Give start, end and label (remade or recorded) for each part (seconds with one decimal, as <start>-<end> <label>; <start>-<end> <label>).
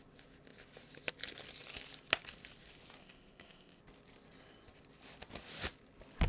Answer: 0.0-3.0 recorded; 3.0-3.8 remade; 3.8-6.3 recorded